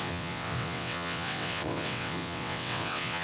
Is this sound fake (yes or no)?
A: yes